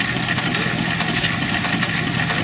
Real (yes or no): yes